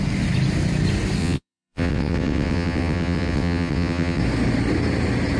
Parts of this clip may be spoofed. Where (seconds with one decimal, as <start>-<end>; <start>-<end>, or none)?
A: 1.2-4.2